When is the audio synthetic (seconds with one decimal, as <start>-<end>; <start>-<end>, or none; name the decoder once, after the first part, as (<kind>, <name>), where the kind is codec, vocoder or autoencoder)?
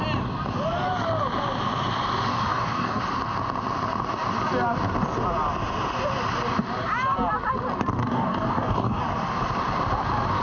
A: 2.3-3.0 (codec, DAC); 8.0-9.0